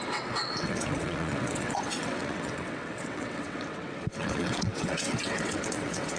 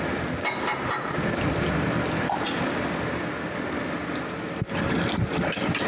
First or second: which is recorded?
second